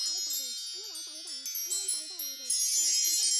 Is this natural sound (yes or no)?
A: yes